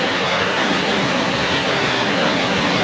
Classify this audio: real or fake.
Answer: fake